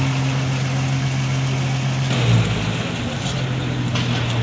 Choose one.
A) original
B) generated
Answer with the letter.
A